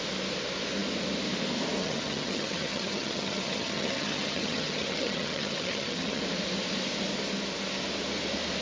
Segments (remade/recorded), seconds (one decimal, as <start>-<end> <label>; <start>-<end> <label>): 0.0-1.8 recorded; 1.8-6.2 remade; 6.2-8.6 recorded